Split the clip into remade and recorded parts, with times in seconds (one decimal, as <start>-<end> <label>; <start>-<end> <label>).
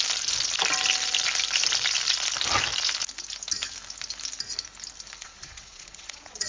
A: 0.0-5.2 recorded; 5.2-6.5 remade